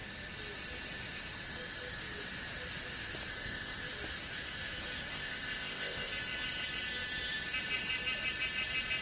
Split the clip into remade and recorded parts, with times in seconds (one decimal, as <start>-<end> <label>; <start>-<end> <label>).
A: 0.0-3.3 recorded; 3.3-3.8 remade; 3.8-5.1 recorded; 5.1-6.1 remade; 6.1-9.0 recorded